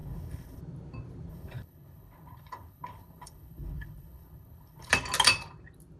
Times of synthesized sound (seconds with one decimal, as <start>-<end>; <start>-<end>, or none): 0.0-0.6; 1.3-4.9